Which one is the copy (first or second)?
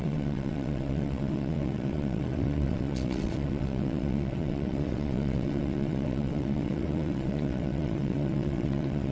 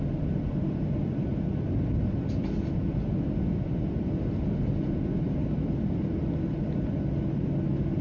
first